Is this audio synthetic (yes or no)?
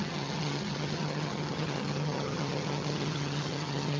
yes